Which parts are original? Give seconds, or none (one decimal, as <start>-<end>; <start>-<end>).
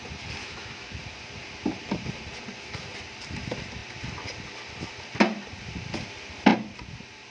0.0-0.4; 1.0-7.3